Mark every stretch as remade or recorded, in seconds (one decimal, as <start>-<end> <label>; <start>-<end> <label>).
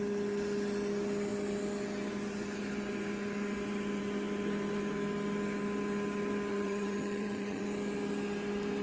0.0-6.5 recorded; 6.5-7.6 remade; 7.6-8.8 recorded